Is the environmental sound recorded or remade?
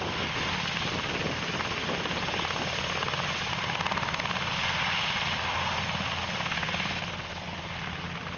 recorded